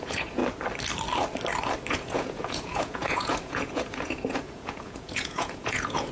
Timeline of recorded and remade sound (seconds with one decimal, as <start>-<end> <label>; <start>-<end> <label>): 0.0-0.4 remade; 0.4-1.9 recorded; 1.9-6.1 remade